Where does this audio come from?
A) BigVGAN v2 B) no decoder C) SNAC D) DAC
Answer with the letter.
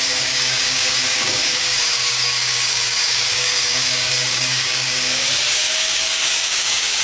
D